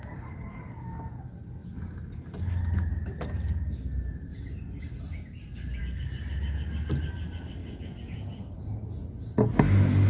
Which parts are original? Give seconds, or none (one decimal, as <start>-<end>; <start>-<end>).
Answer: 0.0-7.6; 8.6-10.1

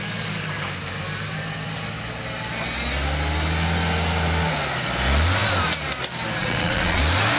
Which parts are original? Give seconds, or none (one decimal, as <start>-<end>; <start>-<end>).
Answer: 0.0-6.4; 7.0-7.4